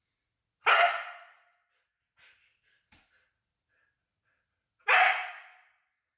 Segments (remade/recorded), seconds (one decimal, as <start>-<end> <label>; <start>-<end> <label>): 0.0-6.2 recorded